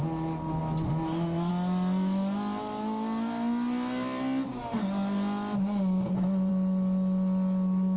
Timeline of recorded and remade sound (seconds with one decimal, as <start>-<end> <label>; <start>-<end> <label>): 0.0-8.0 recorded

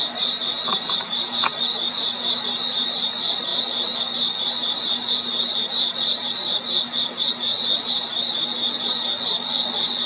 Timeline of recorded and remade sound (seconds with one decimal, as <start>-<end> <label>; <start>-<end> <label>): 0.0-0.7 recorded; 0.7-1.6 remade; 1.6-3.5 recorded; 3.5-4.0 remade; 4.0-10.1 recorded

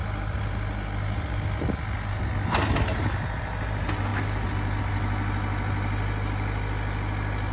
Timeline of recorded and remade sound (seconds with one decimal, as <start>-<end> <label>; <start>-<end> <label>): 0.0-7.5 recorded

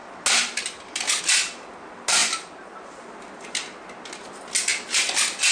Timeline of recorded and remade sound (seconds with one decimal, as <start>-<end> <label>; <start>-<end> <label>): 0.0-5.5 recorded

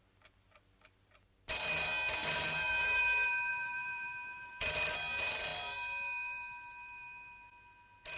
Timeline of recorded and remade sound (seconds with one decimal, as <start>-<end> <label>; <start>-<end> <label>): 0.0-2.2 recorded; 2.2-3.0 remade; 3.0-3.5 recorded; 3.5-4.7 remade; 4.7-8.2 recorded